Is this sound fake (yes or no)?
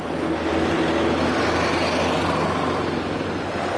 no